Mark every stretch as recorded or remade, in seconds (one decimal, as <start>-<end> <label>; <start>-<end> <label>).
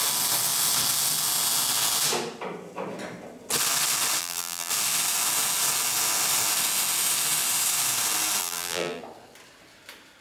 0.0-4.2 recorded; 4.2-4.7 remade; 4.7-8.4 recorded; 8.4-9.0 remade; 9.0-10.2 recorded